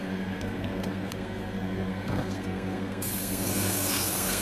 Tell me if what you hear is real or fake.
fake